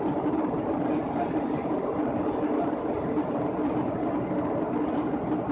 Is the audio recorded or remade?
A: recorded